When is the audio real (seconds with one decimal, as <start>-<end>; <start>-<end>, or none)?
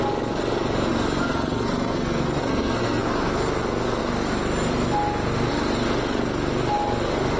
0.0-1.3; 3.0-7.4